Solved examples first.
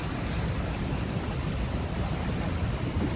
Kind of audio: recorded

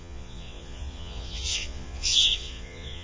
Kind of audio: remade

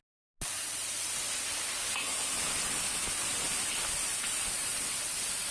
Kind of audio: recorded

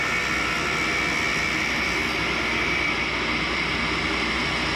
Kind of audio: recorded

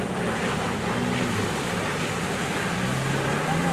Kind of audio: recorded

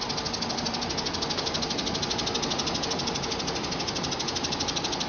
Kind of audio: recorded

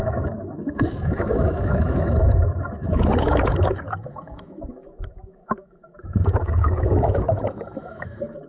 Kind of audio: remade